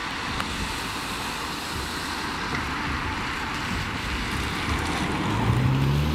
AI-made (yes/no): no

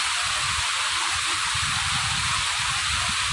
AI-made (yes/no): yes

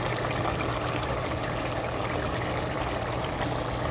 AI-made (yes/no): no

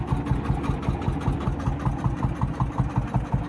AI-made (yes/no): no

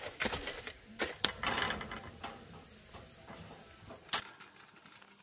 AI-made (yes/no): no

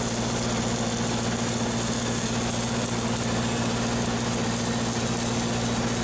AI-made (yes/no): no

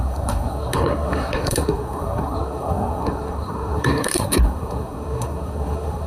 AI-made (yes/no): yes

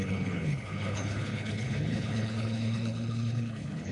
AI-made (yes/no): yes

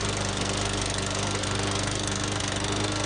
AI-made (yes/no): yes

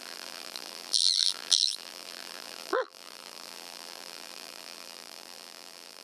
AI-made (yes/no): yes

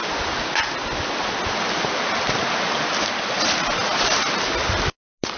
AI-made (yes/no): no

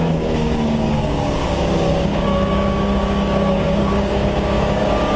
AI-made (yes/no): yes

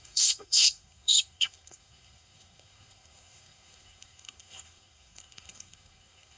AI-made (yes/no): yes